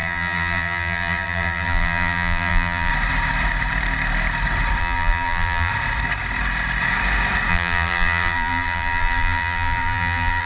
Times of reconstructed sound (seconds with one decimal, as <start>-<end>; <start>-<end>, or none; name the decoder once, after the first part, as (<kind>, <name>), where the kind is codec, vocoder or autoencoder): 0.0-2.9 (vocoder, BigVGAN v2); 4.8-5.7; 7.5-10.5